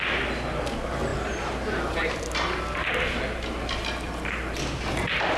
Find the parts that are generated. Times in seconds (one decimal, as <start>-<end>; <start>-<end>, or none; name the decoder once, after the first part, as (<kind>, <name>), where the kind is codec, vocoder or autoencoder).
none